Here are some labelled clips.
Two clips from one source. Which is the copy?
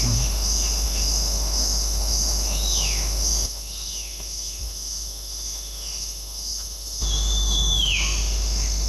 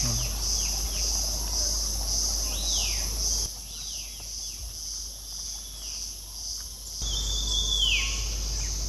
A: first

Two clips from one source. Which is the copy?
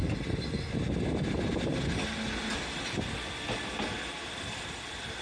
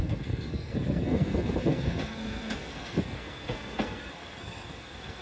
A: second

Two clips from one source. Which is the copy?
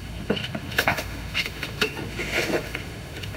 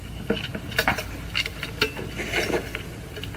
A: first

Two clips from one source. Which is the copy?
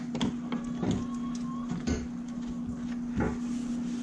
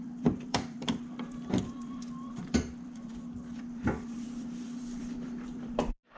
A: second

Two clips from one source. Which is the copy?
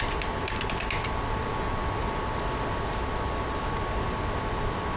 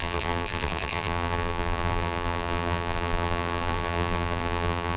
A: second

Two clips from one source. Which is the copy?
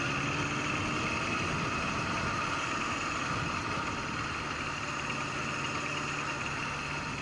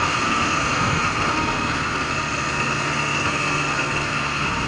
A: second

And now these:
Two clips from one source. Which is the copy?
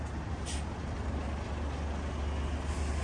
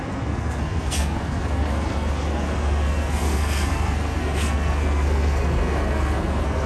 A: second